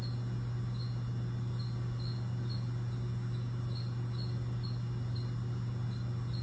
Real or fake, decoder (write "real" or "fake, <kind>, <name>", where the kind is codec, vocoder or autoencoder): real